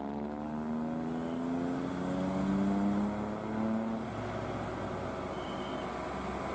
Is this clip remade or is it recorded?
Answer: recorded